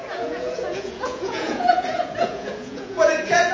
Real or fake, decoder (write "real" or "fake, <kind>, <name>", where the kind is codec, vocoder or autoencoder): fake, vocoder, Vocos